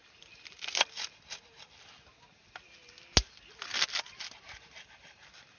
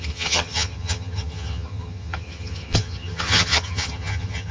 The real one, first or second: first